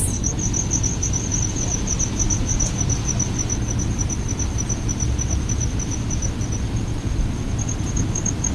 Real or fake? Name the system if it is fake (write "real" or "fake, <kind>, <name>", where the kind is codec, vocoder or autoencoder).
real